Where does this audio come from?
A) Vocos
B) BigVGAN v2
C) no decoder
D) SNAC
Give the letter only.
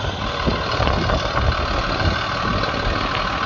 C